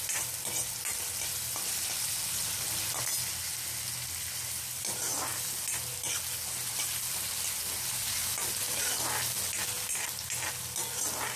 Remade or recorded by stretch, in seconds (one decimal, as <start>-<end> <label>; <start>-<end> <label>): 0.0-11.4 recorded